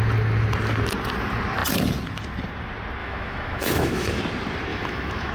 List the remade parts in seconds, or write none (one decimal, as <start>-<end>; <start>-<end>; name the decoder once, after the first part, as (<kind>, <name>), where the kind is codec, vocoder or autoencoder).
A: 3.0-4.2 (autoencoder, DAC-VAE); 4.7-5.3